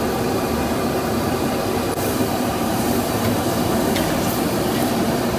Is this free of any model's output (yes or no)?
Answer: no